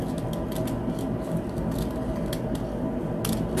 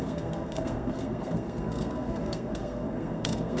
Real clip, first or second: first